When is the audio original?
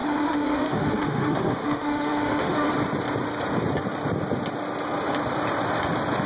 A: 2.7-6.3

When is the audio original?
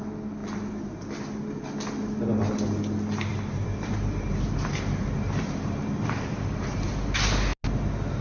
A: 0.0-3.3; 6.9-8.2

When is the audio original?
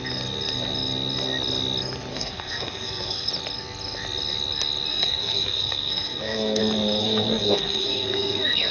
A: 0.0-2.1; 3.3-4.9; 6.6-7.0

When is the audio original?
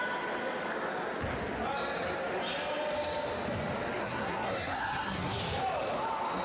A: 0.0-4.0; 5.4-6.4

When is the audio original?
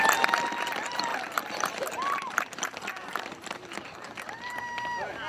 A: 0.0-2.9; 4.6-5.3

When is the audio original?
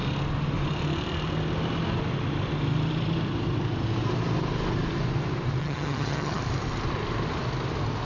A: 0.0-5.6; 6.4-8.0